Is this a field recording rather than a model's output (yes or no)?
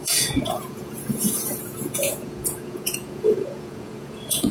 no